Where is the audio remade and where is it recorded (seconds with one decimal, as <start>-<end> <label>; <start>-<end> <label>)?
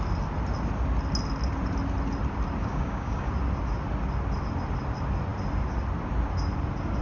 0.0-2.6 recorded; 2.6-3.3 remade; 3.3-7.0 recorded